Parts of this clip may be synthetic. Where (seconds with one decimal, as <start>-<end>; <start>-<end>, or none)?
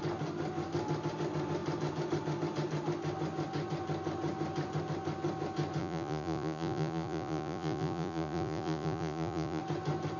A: 5.8-9.6